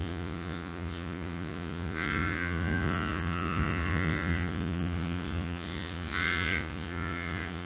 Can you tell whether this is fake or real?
fake